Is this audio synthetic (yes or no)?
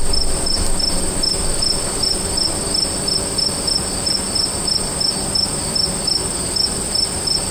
no